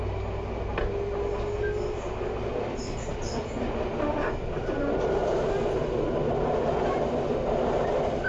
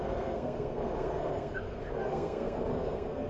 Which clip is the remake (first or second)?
second